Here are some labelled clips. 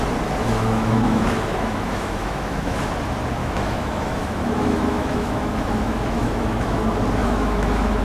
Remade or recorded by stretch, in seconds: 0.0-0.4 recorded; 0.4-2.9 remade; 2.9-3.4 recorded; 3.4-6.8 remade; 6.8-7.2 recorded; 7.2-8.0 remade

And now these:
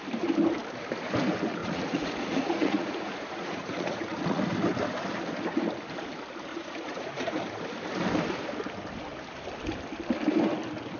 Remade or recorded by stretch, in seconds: 0.0-1.6 recorded; 1.6-4.4 remade; 4.4-6.5 recorded; 6.5-7.4 remade; 7.4-11.0 recorded

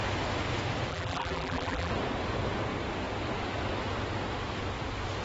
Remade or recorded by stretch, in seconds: 0.0-0.9 recorded; 0.9-1.9 remade; 1.9-5.2 recorded